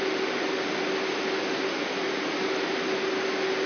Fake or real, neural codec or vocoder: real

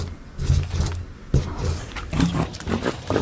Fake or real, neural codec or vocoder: real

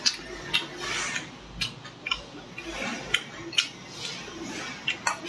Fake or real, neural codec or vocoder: real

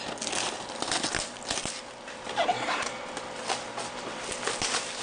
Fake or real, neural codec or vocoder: real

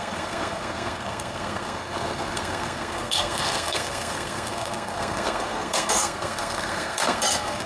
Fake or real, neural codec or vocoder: fake, codec, SNAC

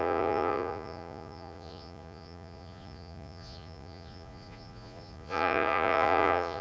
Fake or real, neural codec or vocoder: fake, vocoder, Vocos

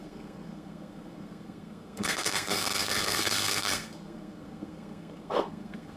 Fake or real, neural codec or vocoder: fake, codec, SNAC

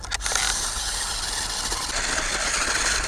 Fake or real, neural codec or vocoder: real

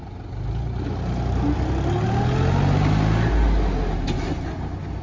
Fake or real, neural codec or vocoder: real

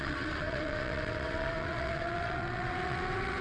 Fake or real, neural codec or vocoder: fake, vocoder, WaveNeXt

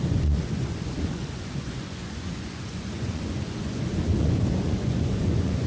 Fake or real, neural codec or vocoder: fake, vocoder, Vocos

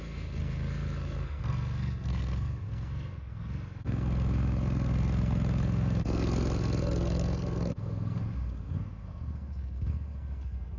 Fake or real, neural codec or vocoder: fake, codec, SNAC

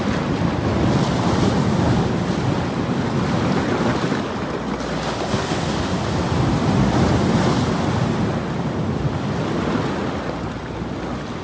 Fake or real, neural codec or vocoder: real